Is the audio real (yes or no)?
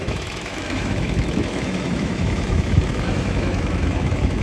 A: no